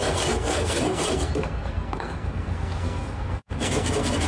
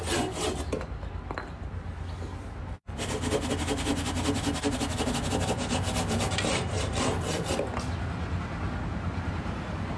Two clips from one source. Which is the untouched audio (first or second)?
second